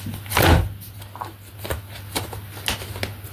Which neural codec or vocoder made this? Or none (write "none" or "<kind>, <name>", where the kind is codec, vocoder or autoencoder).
none